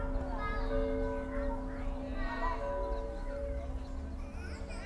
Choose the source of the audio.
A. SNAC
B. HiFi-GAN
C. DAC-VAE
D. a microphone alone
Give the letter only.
D